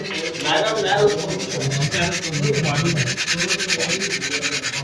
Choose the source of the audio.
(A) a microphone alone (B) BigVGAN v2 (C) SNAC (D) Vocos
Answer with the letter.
A